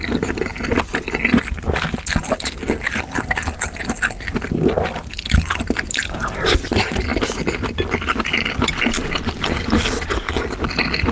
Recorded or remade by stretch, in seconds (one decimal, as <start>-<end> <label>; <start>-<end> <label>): 0.0-11.1 recorded